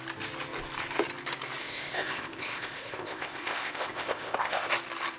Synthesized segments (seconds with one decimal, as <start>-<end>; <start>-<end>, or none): 1.6-4.7